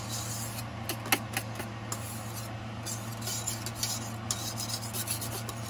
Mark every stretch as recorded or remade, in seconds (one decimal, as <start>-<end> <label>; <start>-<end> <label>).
0.0-5.7 recorded